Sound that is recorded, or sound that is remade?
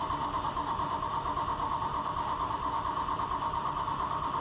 recorded